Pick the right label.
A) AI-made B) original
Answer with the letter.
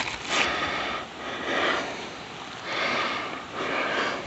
B